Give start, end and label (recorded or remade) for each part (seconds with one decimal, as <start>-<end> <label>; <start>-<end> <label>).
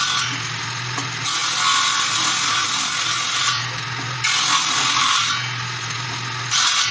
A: 0.0-6.9 recorded